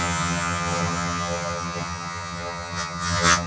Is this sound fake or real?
fake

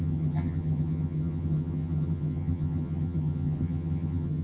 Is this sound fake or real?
fake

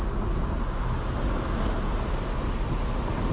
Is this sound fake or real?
real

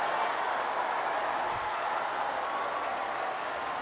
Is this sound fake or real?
real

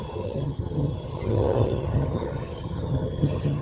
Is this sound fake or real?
fake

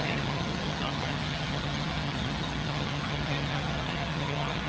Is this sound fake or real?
fake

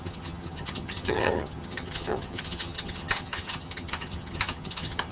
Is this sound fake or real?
fake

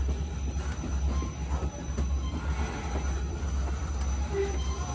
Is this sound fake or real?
real